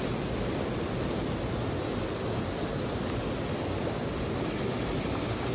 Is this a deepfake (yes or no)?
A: no